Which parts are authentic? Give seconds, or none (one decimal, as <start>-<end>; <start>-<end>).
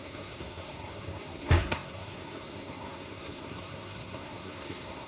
none